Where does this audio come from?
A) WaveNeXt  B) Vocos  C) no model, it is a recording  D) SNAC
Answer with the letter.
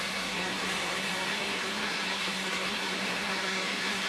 D